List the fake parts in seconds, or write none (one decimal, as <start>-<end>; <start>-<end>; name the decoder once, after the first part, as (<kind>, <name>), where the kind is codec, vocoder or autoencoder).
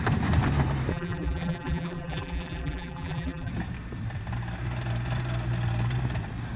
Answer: 0.9-3.5 (vocoder, BigVGAN v2)